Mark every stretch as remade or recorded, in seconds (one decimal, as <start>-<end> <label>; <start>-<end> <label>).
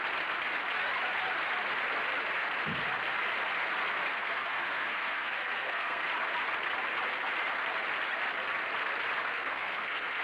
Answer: 0.0-4.1 recorded; 4.1-6.0 remade; 6.0-9.3 recorded; 9.3-10.2 remade